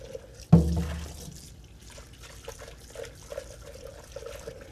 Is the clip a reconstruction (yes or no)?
no